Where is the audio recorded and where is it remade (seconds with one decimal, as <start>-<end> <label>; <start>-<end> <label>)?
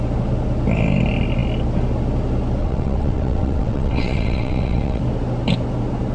0.0-2.6 recorded; 2.6-5.0 remade; 5.0-6.1 recorded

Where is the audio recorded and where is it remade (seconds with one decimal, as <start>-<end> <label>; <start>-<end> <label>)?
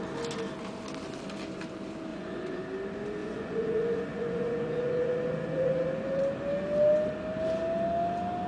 0.0-2.1 recorded; 2.1-2.6 remade; 2.6-3.2 recorded; 3.2-6.2 remade; 6.2-8.5 recorded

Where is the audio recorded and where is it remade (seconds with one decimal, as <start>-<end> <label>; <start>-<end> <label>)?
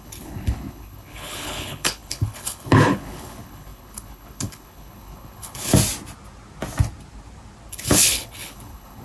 0.0-5.7 remade; 5.7-7.7 recorded; 7.7-9.0 remade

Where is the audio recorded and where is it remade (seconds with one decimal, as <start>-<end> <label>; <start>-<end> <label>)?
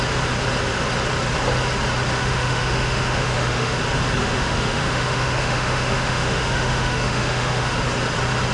0.0-2.2 recorded; 2.2-3.8 remade; 3.8-4.2 recorded; 4.2-7.8 remade; 7.8-8.5 recorded